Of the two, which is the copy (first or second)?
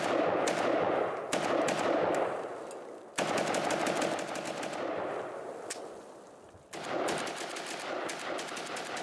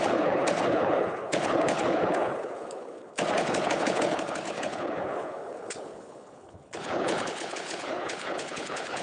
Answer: second